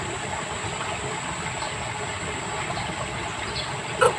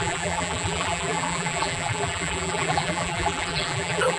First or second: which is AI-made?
second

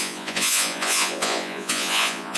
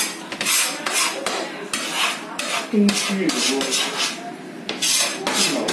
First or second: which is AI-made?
first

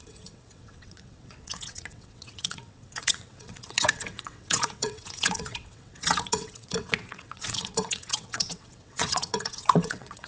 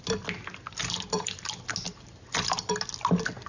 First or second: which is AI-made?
first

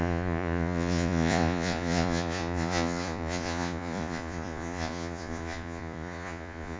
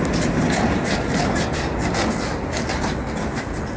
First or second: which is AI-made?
first